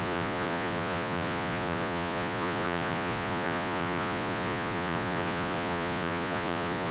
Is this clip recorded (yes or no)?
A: no